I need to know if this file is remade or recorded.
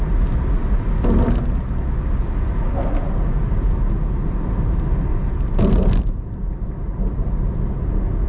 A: recorded